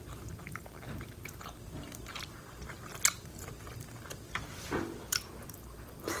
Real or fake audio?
real